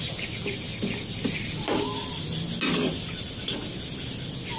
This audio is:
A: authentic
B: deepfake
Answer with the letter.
A